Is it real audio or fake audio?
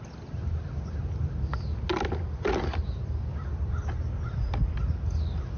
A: real